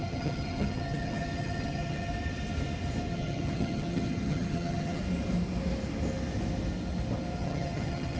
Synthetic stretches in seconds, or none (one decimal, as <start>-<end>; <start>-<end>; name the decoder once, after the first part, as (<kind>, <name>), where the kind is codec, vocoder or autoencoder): 0.0-2.1 (vocoder, HiFi-GAN); 3.1-5.0; 7.4-8.2